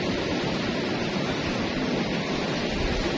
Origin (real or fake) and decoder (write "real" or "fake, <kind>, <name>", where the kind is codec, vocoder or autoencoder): real